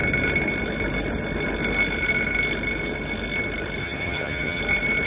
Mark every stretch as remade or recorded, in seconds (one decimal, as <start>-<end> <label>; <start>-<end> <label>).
0.0-3.8 recorded; 3.8-4.6 remade; 4.6-5.1 recorded